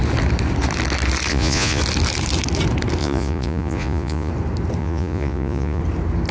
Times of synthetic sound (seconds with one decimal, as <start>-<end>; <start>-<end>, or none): 1.3-1.8; 3.0-4.3; 4.8-5.8